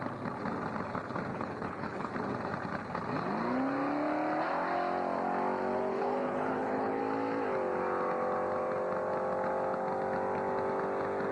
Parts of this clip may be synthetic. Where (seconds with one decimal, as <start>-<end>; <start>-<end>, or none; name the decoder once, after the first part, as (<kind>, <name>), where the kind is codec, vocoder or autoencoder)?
1.3-2.1 (codec, HILCodec); 5.9-7.0